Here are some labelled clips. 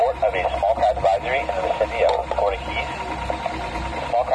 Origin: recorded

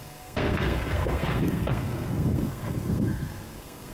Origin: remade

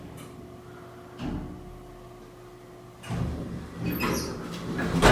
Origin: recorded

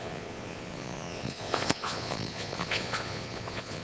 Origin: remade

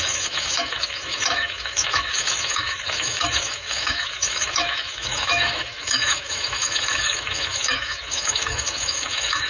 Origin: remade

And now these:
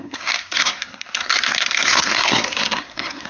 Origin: remade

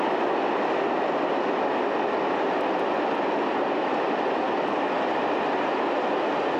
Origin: recorded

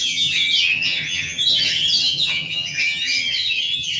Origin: remade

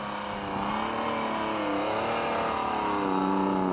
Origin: recorded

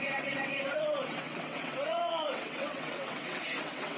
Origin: remade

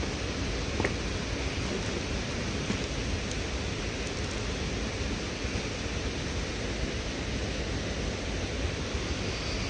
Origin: recorded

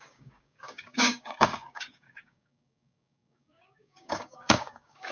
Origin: remade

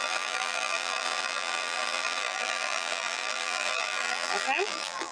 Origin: remade